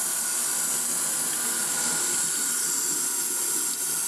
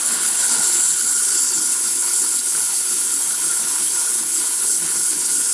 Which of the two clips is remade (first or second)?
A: second